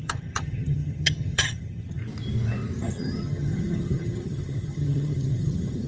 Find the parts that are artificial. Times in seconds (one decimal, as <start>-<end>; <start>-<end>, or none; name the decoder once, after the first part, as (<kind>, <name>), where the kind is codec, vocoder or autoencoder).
0.0-2.0 (vocoder, HiFi-GAN); 2.8-5.9